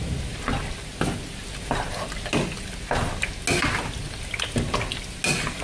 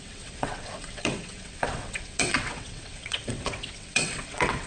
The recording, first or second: first